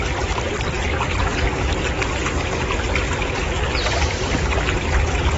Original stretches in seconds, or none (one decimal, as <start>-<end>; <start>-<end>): 1.3-4.2